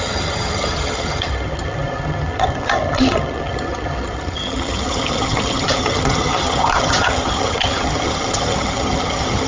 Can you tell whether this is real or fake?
fake